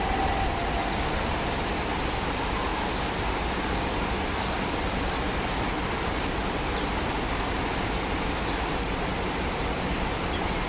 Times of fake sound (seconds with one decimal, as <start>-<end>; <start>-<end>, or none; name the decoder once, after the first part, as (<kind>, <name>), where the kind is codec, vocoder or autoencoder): none